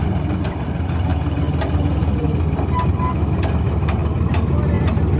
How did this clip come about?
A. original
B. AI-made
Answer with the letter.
A